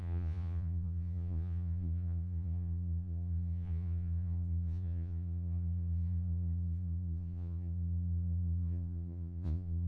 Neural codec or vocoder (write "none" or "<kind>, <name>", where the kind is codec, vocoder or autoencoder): vocoder, Vocos